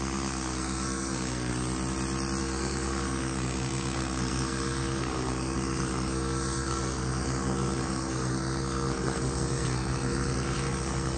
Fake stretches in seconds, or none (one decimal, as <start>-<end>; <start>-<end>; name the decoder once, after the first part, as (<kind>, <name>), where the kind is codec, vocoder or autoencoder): 0.0-1.5 (codec, SNAC); 2.4-11.2